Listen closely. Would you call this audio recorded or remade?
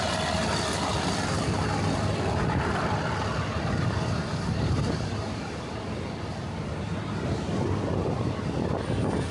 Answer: recorded